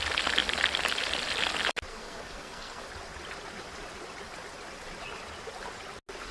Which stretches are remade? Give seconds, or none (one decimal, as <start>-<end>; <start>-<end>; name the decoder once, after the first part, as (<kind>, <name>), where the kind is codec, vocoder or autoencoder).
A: 1.9-2.9 (codec, SNAC)